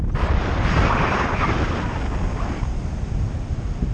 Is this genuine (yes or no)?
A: yes